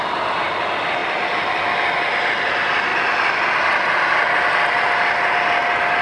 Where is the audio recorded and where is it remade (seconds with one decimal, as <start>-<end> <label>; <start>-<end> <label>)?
0.0-1.0 recorded; 1.0-2.3 remade; 2.3-2.9 recorded; 2.9-4.4 remade; 4.4-6.0 recorded